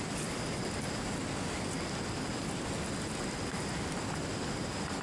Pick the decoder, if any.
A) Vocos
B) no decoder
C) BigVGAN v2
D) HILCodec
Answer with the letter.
B